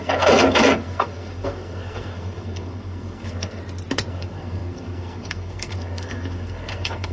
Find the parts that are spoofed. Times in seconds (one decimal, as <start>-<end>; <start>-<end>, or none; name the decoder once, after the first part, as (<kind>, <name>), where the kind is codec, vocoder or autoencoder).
0.0-3.6 (codec, SNAC); 4.1-7.1

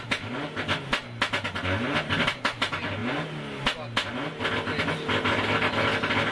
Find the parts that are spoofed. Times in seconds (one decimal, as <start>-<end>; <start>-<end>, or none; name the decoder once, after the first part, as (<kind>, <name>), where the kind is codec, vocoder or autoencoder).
none

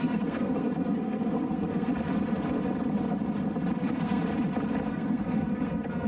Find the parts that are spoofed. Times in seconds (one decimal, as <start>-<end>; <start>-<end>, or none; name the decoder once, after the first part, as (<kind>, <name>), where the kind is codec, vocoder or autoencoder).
0.0-1.9 (codec, SNAC); 3.8-4.2; 4.9-6.1

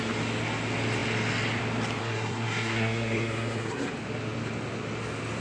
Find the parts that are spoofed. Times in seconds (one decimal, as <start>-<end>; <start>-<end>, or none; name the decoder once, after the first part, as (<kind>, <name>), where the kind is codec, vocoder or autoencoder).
2.0-3.9 (codec, SNAC)

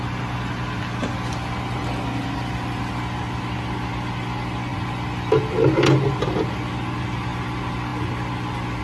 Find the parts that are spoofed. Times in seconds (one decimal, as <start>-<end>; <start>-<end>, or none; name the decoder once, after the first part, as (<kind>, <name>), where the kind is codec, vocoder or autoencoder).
none

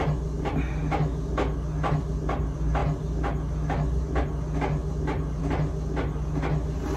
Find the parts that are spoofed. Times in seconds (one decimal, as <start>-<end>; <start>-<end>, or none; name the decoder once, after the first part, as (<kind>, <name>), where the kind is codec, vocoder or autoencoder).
none